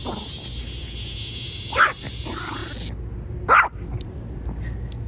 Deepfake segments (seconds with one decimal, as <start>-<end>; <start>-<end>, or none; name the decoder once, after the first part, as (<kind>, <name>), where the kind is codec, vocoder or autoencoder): none